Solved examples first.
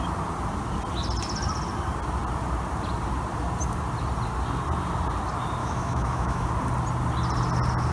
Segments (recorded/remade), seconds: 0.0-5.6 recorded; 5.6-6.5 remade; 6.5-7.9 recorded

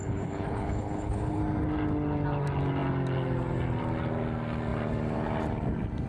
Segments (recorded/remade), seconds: 0.0-1.4 remade; 1.4-6.1 recorded

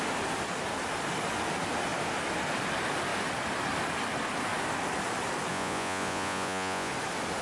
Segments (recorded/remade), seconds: 0.0-5.5 recorded; 5.5-6.9 remade; 6.9-7.4 recorded

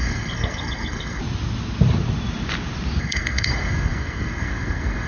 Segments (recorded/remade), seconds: 0.0-1.2 remade; 1.2-3.0 recorded; 3.0-5.1 remade

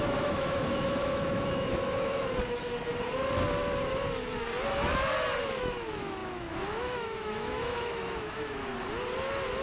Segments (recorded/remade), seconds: 0.0-2.9 remade; 2.9-5.6 recorded; 5.6-8.7 remade; 8.7-9.6 recorded

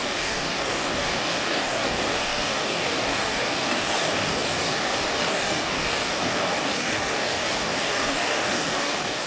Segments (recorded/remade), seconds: 0.0-9.3 remade